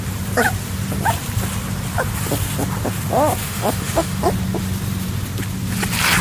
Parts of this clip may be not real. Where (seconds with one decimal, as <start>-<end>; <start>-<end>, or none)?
3.4-4.2

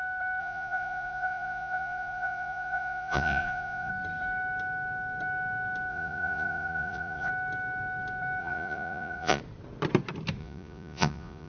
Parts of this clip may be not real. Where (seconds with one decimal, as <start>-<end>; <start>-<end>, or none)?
0.4-3.9; 5.9-7.3; 8.4-9.4; 10.4-11.5

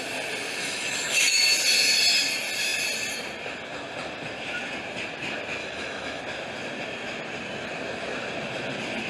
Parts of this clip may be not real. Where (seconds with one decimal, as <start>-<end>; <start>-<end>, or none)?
0.6-1.4; 5.6-6.2